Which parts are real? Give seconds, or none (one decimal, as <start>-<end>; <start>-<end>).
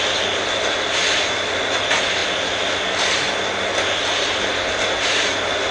0.0-5.7